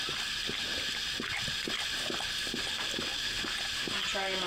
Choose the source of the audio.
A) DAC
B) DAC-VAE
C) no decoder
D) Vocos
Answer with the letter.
C